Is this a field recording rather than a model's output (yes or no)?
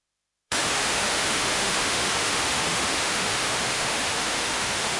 no